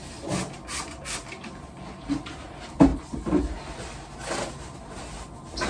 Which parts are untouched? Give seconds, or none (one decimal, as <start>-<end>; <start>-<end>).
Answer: 0.0-5.7